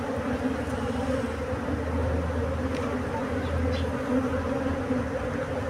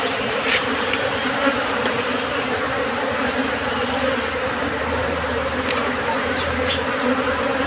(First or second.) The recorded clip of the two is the first